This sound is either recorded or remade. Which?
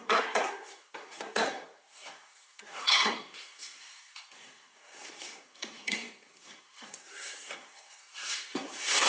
remade